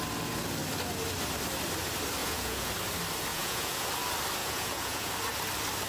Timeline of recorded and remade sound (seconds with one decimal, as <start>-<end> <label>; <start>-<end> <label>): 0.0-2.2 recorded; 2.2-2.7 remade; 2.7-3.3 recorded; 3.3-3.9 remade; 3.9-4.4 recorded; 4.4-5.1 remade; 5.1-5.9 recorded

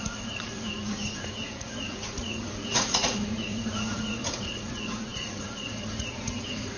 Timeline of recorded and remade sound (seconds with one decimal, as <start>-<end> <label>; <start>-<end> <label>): 0.0-6.8 remade

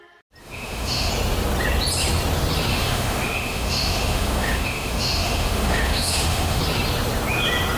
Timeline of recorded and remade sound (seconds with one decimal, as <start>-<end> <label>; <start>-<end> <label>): 0.0-0.4 recorded; 0.4-1.1 remade; 1.1-2.7 recorded; 2.7-6.6 remade; 6.6-7.8 recorded